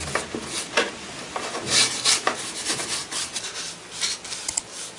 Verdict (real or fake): real